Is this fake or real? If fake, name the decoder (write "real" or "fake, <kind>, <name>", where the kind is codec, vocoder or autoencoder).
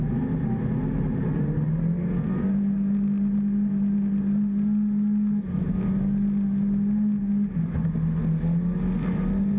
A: real